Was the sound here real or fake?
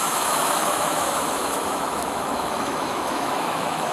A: fake